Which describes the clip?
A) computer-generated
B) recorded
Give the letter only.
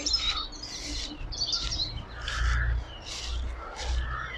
B